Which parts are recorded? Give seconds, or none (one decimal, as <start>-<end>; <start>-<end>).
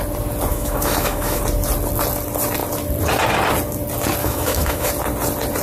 0.0-0.5; 1.4-4.2; 4.9-5.6